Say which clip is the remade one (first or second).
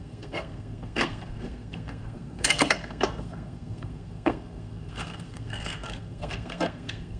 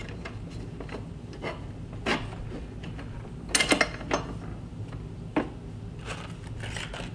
first